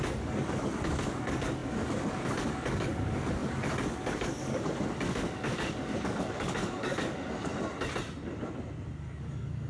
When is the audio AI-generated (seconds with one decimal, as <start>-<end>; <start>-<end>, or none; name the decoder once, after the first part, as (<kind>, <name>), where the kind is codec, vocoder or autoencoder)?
0.0-7.5 (codec, DAC); 9.0-9.7